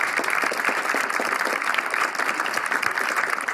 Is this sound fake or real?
real